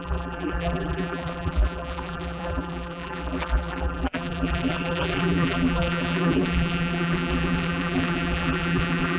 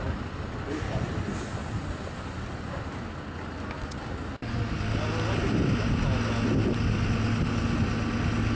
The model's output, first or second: first